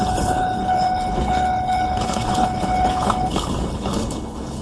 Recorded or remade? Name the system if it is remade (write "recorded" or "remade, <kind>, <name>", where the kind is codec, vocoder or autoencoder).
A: remade, codec, HILCodec